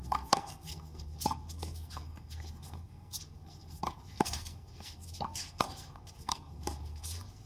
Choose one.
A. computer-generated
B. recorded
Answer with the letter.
A